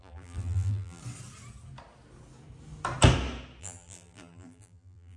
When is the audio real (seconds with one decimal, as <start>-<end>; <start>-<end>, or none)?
1.0-3.6